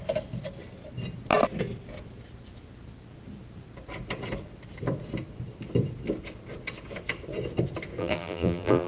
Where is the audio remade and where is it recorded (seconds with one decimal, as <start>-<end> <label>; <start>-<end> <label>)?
0.0-8.0 recorded; 8.0-8.9 remade